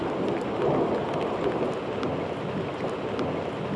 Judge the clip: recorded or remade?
recorded